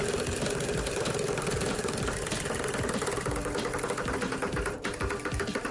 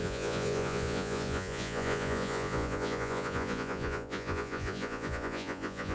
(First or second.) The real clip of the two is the first